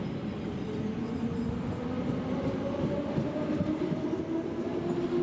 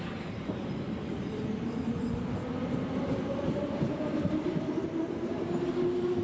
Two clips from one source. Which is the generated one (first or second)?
second